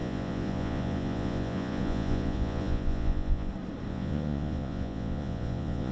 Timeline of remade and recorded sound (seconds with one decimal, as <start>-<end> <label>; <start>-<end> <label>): 0.0-3.5 remade; 3.5-3.9 recorded; 3.9-5.9 remade